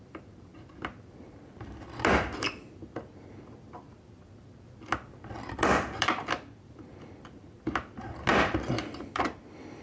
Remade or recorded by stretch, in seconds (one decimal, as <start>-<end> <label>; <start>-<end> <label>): 0.0-9.8 remade